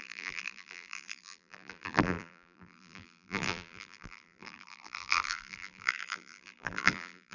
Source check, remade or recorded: remade